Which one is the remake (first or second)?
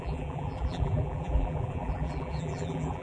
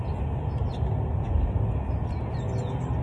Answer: first